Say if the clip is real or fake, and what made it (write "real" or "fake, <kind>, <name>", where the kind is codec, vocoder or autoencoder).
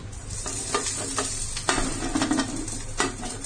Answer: real